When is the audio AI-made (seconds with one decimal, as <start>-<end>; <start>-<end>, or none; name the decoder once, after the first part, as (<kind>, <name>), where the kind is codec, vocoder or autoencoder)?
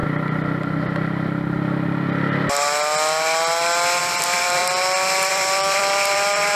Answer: 4.0-4.6 (vocoder, BigVGAN v2); 5.3-6.6